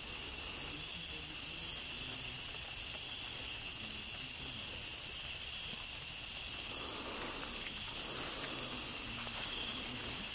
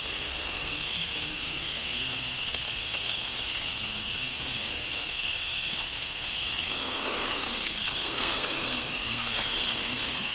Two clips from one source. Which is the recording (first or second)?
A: first